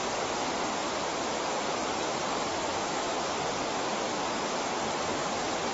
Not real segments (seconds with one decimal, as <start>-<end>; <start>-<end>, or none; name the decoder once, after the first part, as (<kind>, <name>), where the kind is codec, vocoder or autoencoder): 0.8-3.5 (vocoder, BigVGAN v2); 3.9-4.5